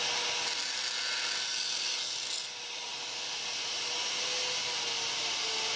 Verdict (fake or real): real